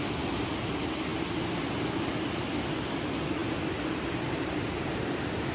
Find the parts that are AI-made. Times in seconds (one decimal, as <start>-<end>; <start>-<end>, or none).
none